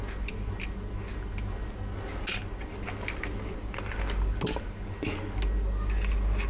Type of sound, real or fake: real